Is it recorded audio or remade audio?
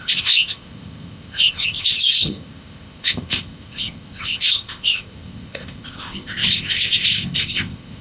remade